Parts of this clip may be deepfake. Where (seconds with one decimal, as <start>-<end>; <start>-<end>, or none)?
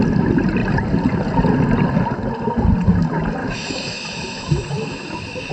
3.4-5.5